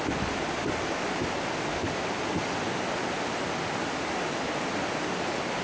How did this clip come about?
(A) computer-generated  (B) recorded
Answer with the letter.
B